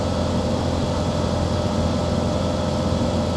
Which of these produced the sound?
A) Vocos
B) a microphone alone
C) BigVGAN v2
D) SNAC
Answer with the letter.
B